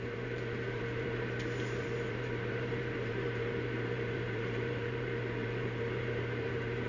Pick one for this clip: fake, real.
fake